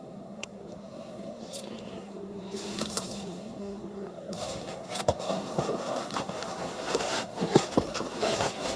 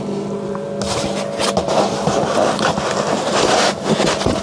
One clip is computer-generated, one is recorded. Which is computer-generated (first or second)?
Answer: first